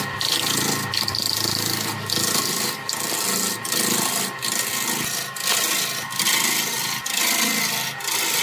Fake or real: real